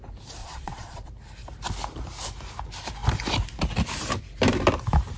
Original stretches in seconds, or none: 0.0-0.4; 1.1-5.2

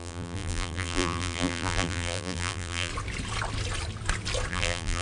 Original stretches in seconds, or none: 2.9-4.5